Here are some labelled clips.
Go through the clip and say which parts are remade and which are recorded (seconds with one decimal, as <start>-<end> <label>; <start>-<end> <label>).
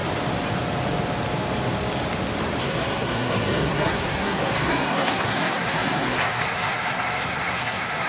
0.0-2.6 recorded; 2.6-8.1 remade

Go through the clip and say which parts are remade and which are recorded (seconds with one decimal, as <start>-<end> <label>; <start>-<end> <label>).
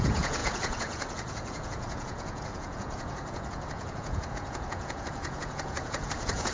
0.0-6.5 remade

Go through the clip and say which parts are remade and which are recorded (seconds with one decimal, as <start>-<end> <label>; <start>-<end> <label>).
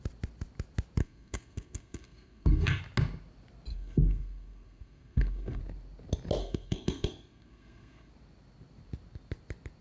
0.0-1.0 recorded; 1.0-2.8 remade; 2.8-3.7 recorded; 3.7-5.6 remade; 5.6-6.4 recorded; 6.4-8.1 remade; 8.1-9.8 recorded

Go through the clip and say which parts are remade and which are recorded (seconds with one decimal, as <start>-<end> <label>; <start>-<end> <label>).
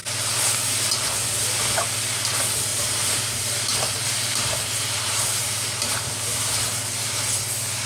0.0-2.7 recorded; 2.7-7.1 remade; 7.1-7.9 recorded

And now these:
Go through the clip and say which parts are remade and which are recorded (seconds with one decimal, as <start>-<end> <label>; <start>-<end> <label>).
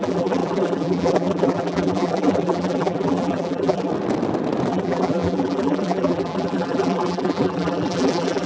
0.0-3.9 remade; 3.9-4.7 recorded; 4.7-8.5 remade